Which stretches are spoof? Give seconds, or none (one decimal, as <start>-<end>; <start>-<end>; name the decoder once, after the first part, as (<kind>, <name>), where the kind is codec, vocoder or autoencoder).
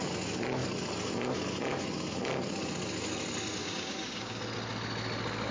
3.6-4.4 (codec, DAC)